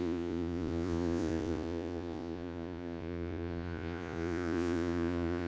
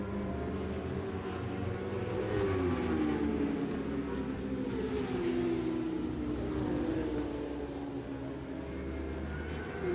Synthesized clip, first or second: first